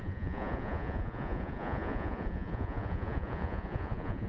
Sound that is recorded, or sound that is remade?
remade